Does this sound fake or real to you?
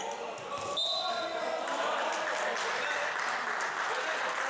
real